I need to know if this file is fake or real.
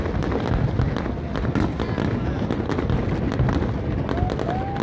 real